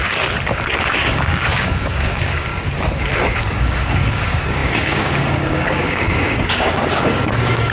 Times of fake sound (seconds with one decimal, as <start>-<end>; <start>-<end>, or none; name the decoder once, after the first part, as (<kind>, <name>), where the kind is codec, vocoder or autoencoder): 0.9-2.5 (codec, DAC); 3.4-7.7